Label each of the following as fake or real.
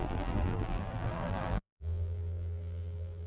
fake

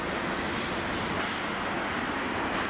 real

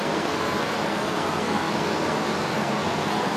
fake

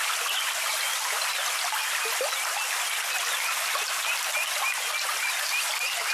real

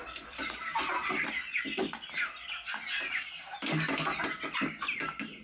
real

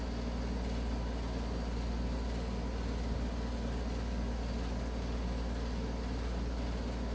real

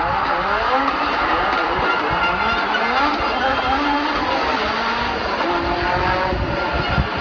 real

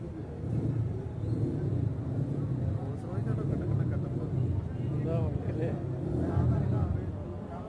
real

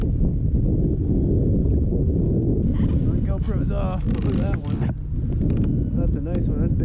real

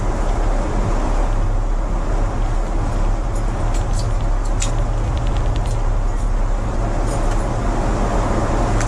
real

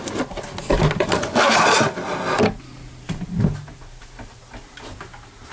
real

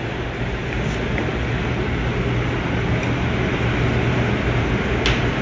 real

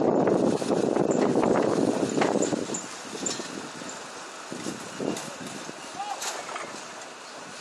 real